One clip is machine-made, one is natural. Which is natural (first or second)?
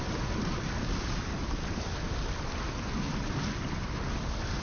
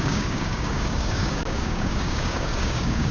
first